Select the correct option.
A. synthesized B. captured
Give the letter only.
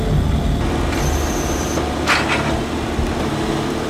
B